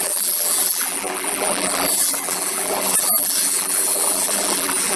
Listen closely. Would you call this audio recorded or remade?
remade